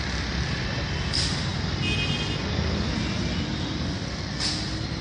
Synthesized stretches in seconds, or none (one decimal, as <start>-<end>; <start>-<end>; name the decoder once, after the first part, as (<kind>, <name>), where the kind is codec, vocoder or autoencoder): none